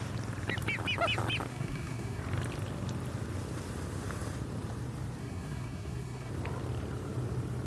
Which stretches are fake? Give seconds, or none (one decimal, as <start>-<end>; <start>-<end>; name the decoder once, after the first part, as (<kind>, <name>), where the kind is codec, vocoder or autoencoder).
1.5-2.2 (codec, SNAC); 5.2-6.3